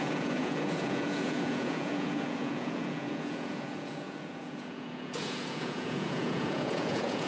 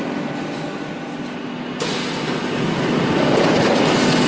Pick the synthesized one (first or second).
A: first